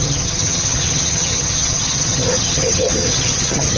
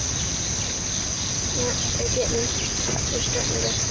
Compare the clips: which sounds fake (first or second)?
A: first